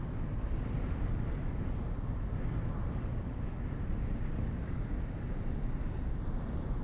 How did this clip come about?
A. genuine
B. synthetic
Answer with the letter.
A